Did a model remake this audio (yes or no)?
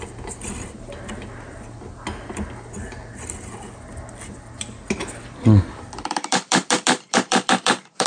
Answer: yes